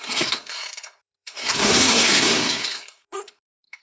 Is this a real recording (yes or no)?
no